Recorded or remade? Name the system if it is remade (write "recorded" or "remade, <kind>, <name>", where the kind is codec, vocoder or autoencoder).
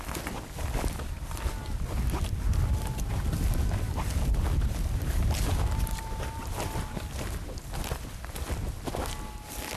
recorded